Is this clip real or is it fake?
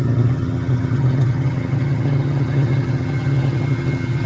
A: fake